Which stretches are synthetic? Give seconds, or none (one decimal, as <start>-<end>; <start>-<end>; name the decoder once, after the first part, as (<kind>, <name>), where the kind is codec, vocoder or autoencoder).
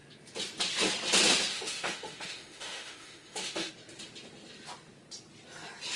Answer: 1.5-3.7 (autoencoder, DAC-VAE)